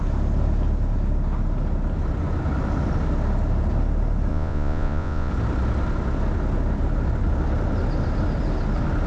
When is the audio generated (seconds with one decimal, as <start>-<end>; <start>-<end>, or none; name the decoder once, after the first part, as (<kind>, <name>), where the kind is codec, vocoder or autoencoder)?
4.3-5.3 (vocoder, Vocos)